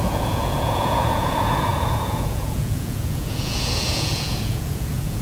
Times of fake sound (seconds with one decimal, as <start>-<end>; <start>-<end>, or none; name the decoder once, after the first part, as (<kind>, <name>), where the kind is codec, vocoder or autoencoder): 0.0-5.2 (vocoder, Vocos)